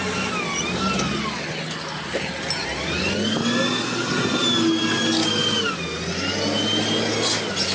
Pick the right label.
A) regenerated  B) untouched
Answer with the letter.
B